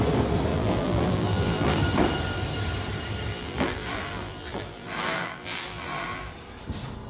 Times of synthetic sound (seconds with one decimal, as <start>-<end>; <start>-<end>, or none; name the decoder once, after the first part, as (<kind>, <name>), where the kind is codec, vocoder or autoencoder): 0.5-1.8 (vocoder, BigVGAN v2); 3.3-6.3